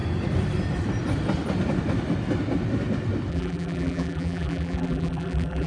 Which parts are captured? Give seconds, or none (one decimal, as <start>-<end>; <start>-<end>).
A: 0.0-3.3